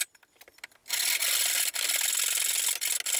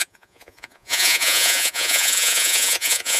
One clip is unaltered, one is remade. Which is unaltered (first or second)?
first